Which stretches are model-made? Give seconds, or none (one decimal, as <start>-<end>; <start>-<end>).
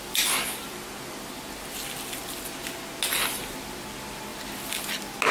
none